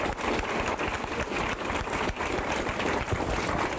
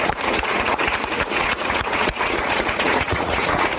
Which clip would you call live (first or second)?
first